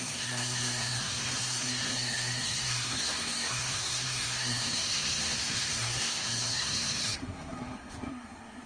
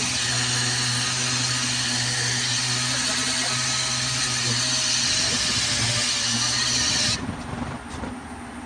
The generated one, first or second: first